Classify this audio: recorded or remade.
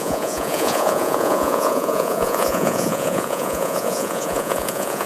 remade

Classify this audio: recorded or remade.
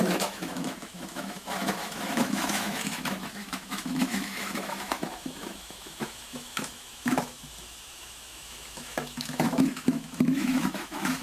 remade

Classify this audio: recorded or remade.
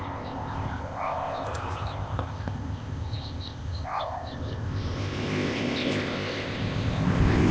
remade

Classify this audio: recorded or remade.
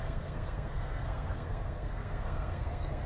remade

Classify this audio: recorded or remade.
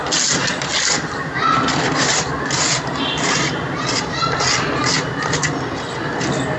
recorded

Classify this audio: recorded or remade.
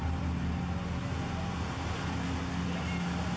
recorded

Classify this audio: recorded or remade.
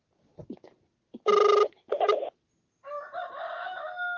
recorded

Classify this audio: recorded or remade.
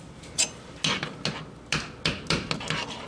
recorded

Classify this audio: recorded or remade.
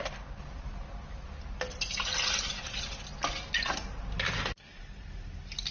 recorded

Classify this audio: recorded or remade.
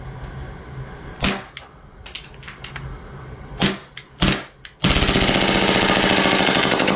recorded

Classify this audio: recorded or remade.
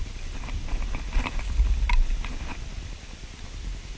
recorded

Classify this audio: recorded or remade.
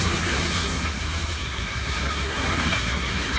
remade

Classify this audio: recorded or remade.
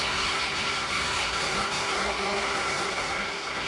remade